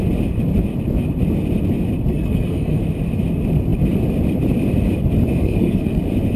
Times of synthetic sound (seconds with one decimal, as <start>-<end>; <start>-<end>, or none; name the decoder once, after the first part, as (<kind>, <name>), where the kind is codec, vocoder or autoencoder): 2.1-2.8 (codec, SNAC); 5.4-6.0